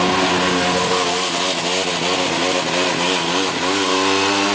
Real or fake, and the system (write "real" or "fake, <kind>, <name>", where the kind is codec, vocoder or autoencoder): real